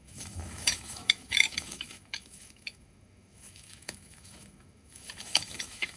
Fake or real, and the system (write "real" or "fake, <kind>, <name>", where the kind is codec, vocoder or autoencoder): fake, autoencoder, DAC-VAE